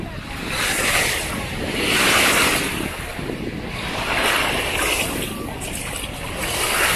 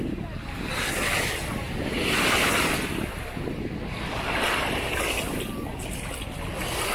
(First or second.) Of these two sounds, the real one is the second